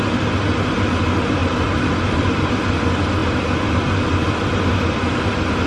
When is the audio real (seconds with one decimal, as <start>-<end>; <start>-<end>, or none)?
0.0-1.4; 2.3-5.7